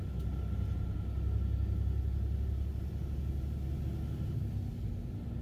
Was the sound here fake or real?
real